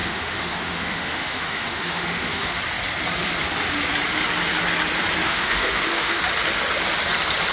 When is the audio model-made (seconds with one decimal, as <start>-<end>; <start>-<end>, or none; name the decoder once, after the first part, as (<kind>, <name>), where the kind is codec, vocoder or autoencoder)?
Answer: 0.0-2.6 (autoencoder, DAC-VAE); 5.2-6.2

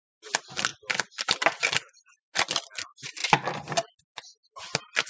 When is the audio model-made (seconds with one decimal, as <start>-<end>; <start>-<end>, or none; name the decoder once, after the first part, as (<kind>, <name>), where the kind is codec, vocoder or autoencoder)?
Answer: none

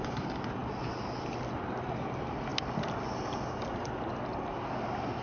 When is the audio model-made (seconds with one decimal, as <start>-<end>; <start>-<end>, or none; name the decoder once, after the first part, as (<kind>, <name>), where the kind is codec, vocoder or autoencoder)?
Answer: none

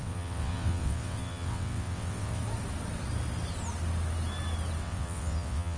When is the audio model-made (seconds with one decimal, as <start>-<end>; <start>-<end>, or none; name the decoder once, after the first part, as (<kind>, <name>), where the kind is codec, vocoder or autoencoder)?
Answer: 0.0-2.4 (vocoder, WaveNeXt); 4.8-5.8

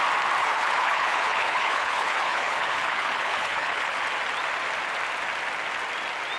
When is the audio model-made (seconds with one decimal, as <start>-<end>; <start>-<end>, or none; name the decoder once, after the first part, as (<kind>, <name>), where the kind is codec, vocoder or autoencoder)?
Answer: 0.4-4.0 (codec, HILCodec)